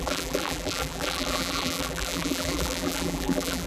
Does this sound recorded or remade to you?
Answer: remade